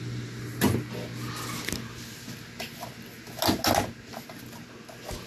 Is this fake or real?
real